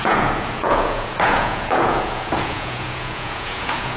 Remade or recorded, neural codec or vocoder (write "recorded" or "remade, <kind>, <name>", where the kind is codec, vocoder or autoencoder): remade, vocoder, Vocos